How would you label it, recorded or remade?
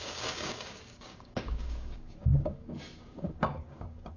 remade